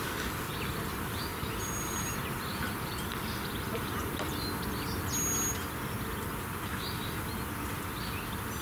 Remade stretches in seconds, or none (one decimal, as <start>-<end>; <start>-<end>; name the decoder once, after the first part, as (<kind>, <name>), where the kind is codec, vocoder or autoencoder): 1.3-3.2 (vocoder, BigVGAN v2)